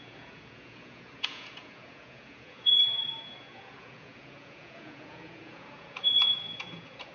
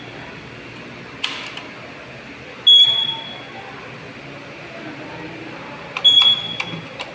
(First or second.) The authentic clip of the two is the second